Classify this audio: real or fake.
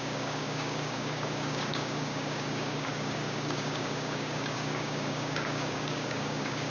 fake